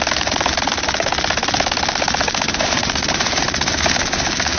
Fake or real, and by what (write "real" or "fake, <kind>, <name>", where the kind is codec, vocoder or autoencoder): real